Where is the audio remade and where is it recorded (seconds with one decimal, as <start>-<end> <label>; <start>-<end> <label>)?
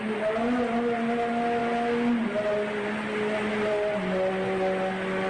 0.0-5.3 recorded